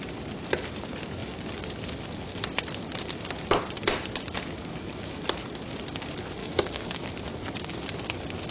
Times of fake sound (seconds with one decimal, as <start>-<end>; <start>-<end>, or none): 6.4-7.1